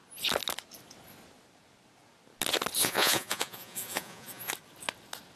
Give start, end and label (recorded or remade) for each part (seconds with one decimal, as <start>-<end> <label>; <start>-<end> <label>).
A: 0.0-2.8 recorded; 2.8-4.5 remade; 4.5-5.4 recorded